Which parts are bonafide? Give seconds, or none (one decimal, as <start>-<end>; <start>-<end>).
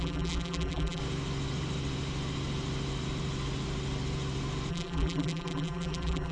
1.0-4.7